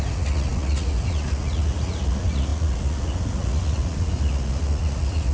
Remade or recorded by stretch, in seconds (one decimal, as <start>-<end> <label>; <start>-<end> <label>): 0.0-5.3 remade